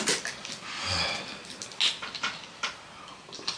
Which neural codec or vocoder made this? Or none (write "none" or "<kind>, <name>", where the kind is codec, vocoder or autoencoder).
none